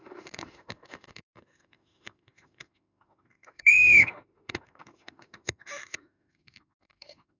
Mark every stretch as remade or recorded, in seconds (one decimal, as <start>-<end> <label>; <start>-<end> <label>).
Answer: 0.0-7.4 remade